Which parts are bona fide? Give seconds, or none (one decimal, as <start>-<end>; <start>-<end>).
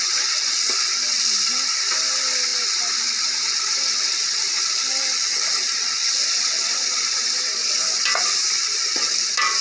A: 0.0-9.6